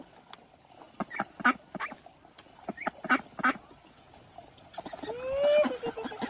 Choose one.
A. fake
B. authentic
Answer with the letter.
B